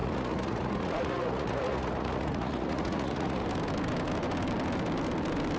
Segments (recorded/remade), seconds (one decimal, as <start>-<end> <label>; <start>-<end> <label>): 0.0-3.4 remade; 3.4-5.6 recorded